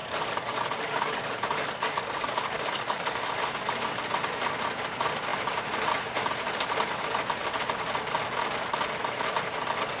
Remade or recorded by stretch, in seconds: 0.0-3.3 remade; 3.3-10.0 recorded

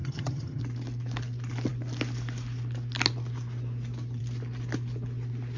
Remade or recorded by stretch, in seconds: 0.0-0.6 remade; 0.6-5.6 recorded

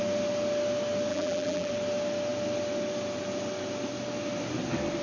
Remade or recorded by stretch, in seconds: 0.0-1.1 recorded; 1.1-1.7 remade; 1.7-5.0 recorded

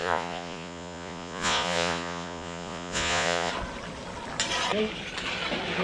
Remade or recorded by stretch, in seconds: 0.0-3.5 remade; 3.5-5.8 recorded

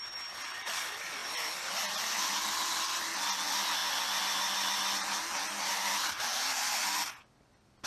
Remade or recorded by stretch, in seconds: 0.0-7.9 recorded

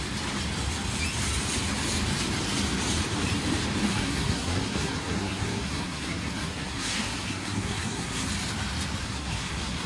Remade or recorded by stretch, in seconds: 0.0-3.9 recorded; 3.9-8.3 remade; 8.3-9.0 recorded; 9.0-9.9 remade

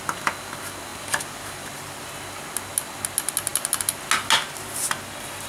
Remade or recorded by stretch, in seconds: 0.0-5.5 recorded

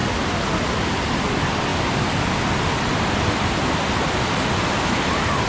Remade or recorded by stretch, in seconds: 0.0-5.5 recorded